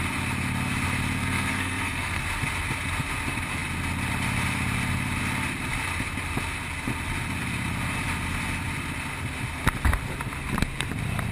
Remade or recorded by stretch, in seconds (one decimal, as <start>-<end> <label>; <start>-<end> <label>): 0.0-1.2 recorded; 1.2-2.2 remade; 2.2-11.3 recorded